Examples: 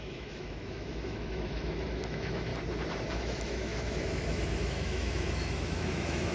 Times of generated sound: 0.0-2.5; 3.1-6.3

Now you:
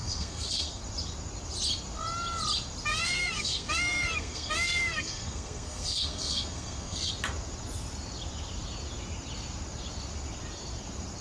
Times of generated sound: 0.0-0.8; 2.9-7.1